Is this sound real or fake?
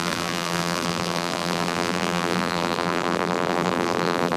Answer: fake